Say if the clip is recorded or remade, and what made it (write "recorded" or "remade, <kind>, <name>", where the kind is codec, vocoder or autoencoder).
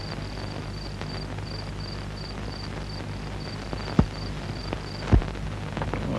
recorded